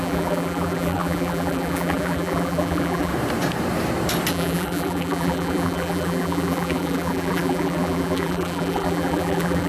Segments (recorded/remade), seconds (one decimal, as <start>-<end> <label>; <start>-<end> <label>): 0.0-3.1 remade; 3.1-4.3 recorded; 4.3-9.7 remade